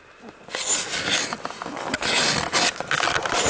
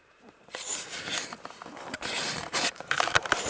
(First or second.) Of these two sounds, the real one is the first